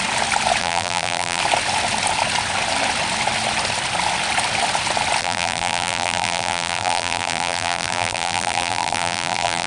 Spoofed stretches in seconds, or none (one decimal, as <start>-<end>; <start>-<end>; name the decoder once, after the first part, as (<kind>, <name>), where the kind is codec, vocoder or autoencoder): 0.6-1.4 (vocoder, BigVGAN v2); 5.2-9.7